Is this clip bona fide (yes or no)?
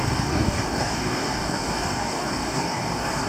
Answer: no